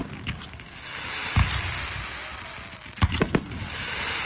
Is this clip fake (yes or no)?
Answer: no